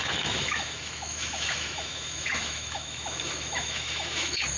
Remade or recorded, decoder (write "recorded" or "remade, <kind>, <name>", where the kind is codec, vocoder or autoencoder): remade, autoencoder, DAC-VAE